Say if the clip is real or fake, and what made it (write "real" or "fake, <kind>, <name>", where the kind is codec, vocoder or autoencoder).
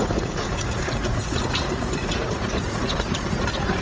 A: fake, vocoder, Vocos